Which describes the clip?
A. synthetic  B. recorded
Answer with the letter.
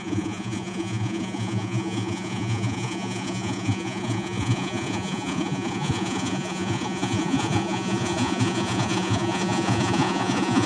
A